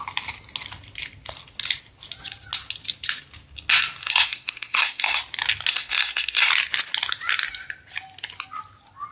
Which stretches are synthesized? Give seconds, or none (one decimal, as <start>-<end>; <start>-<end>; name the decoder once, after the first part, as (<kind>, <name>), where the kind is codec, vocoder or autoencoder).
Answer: 4.0-5.2 (codec, SNAC); 5.7-6.5